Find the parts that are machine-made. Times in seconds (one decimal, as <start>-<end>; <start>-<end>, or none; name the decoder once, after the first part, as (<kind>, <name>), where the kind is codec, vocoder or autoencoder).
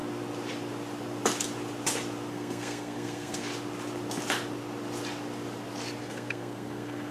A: 2.3-3.5 (codec, SNAC); 6.0-7.1